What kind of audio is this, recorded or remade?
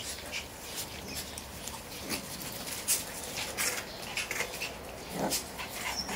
recorded